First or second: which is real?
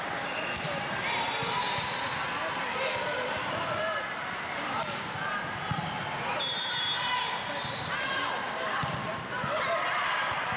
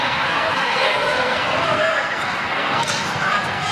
first